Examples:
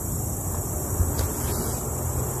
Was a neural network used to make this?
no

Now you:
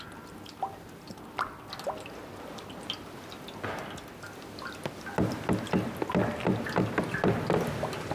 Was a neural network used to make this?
no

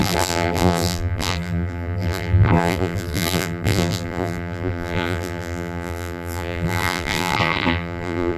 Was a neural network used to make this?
yes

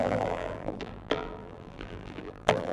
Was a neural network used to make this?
yes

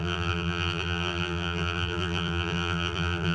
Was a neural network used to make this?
yes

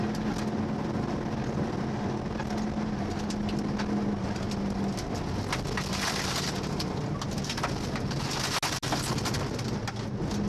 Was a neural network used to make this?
no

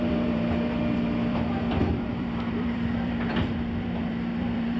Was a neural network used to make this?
yes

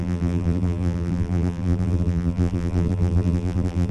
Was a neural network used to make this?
yes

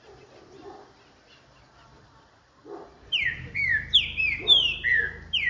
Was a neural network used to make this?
yes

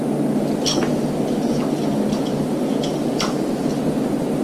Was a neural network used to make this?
no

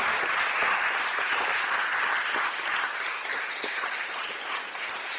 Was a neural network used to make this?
no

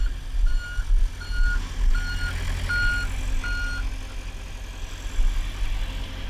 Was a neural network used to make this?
no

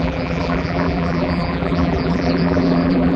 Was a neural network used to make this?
yes